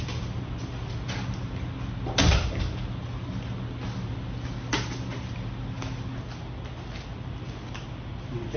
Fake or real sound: real